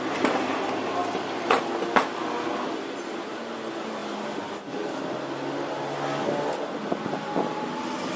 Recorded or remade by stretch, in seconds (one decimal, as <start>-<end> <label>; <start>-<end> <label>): 0.0-1.0 recorded; 1.0-1.6 remade; 1.6-4.0 recorded; 4.0-5.0 remade; 5.0-8.2 recorded